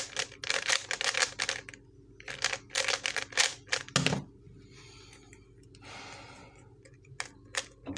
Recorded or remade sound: recorded